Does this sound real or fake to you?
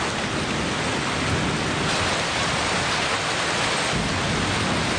real